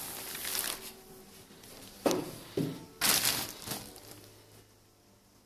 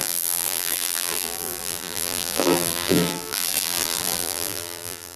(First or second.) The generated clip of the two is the second